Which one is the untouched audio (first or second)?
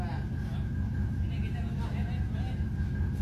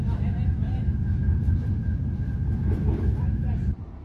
first